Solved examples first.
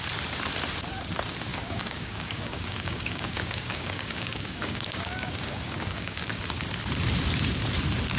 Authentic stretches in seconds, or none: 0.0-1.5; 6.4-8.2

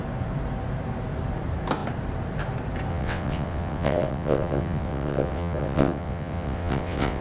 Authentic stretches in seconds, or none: 0.0-2.9

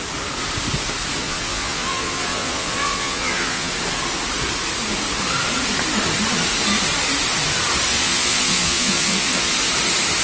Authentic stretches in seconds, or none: 0.0-1.2; 3.7-7.9; 9.5-10.2

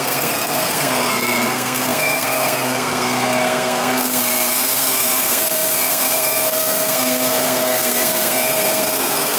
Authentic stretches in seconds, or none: none

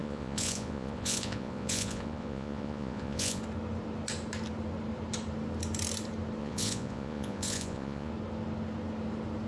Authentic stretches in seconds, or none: 3.4-6.4; 8.1-9.5

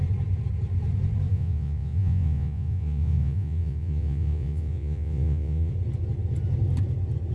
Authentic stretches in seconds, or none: 0.0-1.3; 5.7-7.3